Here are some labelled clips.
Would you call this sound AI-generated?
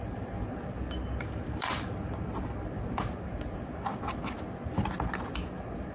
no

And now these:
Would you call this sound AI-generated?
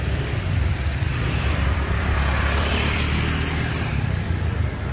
yes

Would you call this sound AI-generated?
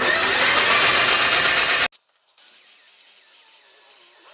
no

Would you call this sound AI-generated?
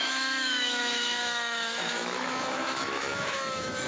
yes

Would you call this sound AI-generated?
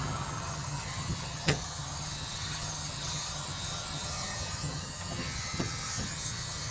yes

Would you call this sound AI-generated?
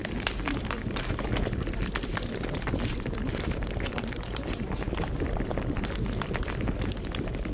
yes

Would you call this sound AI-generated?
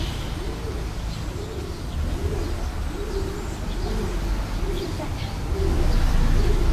no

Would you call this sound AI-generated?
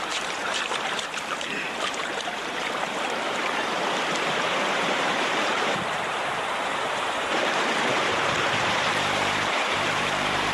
yes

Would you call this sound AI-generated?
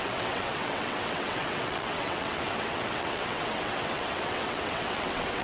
yes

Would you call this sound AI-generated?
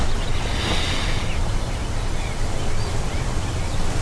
no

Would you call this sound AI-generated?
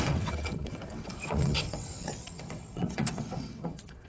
yes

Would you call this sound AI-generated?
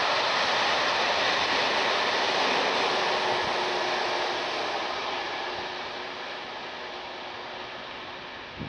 no